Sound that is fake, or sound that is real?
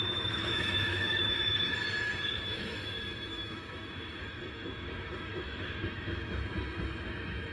fake